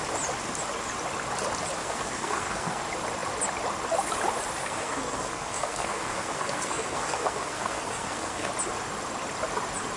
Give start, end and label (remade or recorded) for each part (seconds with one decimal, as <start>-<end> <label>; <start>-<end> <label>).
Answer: 0.0-1.8 recorded; 1.8-2.8 remade; 2.8-4.6 recorded; 4.6-8.5 remade; 8.5-10.0 recorded